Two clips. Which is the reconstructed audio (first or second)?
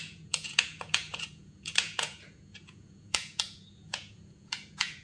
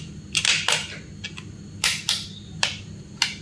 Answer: first